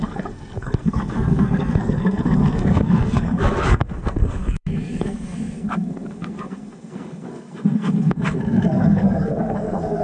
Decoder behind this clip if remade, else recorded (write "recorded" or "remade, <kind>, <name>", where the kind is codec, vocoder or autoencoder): remade, codec, SNAC